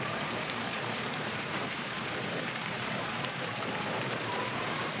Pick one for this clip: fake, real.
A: fake